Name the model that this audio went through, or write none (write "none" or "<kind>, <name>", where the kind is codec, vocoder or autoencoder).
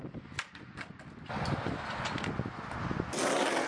none